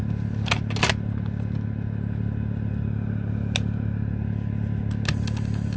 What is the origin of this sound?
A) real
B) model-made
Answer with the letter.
A